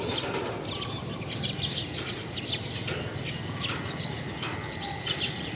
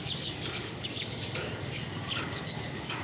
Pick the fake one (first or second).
second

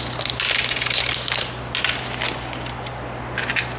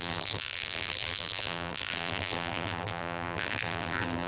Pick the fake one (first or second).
second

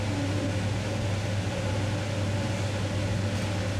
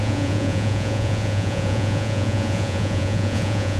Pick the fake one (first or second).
second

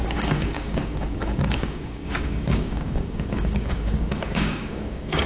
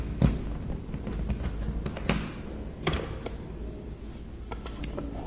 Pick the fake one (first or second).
first